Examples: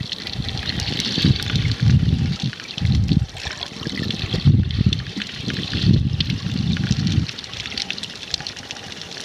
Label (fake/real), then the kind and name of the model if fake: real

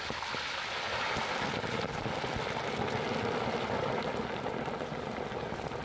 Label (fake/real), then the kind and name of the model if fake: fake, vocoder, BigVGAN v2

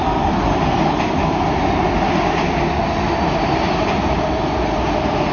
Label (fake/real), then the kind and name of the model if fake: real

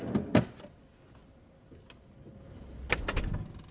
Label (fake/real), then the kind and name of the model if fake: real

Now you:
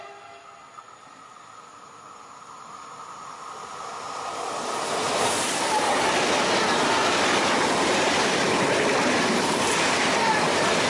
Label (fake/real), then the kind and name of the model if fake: real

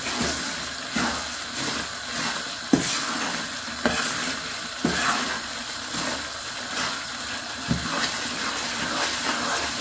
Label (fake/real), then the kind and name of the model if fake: real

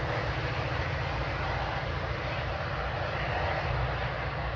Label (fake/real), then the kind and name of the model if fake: real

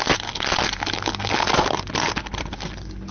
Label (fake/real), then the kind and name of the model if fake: real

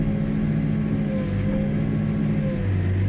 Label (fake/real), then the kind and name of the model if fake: real